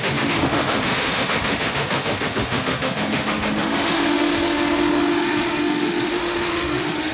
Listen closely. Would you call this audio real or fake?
fake